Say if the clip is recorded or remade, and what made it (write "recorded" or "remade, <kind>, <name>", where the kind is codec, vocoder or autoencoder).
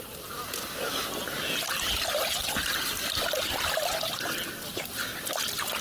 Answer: recorded